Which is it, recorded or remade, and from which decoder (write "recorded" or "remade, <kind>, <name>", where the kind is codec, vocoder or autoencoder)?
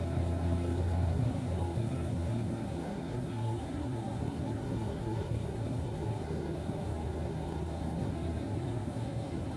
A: remade, codec, SNAC